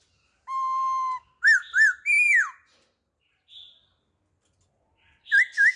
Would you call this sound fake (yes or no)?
no